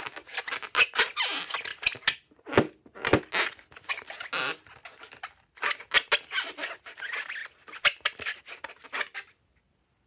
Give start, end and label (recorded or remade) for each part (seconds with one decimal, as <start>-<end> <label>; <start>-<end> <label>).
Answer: 0.0-7.4 recorded; 7.4-8.4 remade; 8.4-10.1 recorded